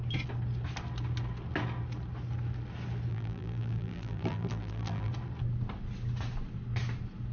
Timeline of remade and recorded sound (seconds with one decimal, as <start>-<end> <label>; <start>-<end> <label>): 0.0-3.1 recorded; 3.1-5.1 remade; 5.1-7.3 recorded